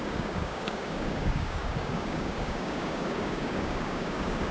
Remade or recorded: remade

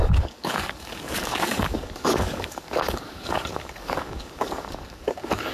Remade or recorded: remade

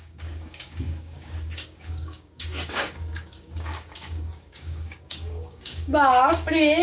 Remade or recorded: remade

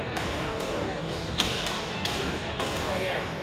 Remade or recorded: remade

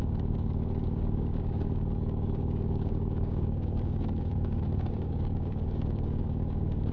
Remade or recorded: remade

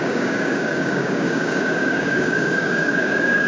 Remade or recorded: remade